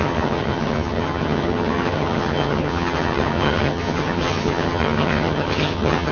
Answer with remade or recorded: remade